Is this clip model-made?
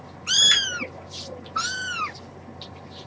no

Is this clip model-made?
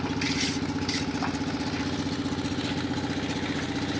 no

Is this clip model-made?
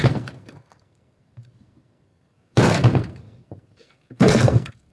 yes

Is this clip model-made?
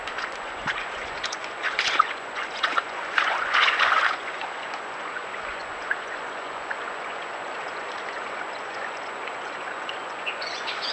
yes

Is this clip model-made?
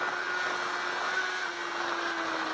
no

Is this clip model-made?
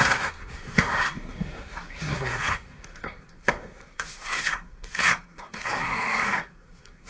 yes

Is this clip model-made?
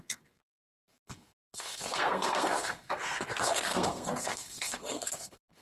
yes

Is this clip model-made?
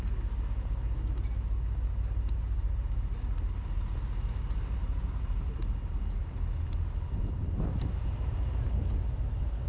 no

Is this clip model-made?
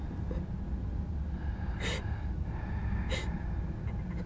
no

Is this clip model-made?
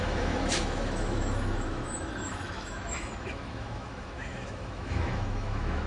yes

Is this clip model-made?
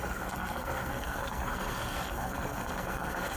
yes